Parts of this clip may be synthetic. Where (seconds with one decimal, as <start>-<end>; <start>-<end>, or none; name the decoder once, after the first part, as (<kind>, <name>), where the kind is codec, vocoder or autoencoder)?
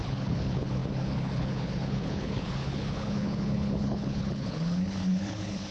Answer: 0.0-5.7 (codec, HILCodec)